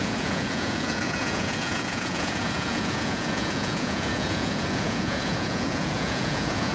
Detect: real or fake fake